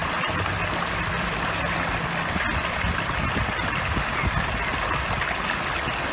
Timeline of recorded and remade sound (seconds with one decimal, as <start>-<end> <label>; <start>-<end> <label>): 0.0-6.1 recorded